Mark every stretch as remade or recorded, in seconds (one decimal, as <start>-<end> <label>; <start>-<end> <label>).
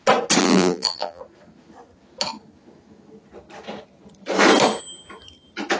0.0-0.4 recorded; 0.4-1.2 remade; 1.2-5.8 recorded